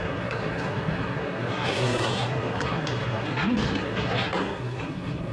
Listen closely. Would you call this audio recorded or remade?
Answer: remade